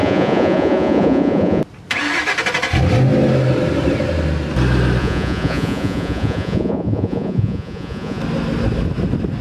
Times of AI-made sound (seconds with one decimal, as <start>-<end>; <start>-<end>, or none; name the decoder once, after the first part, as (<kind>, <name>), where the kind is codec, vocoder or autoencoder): 0.0-1.6 (vocoder, Vocos); 5.0-8.2